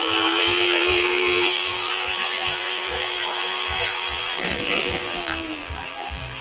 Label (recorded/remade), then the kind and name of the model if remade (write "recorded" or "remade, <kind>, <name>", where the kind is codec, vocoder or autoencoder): remade, vocoder, BigVGAN v2